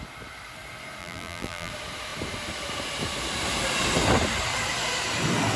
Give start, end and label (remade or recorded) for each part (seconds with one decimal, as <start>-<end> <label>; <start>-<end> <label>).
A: 0.0-1.0 recorded; 1.0-1.7 remade; 1.7-5.6 recorded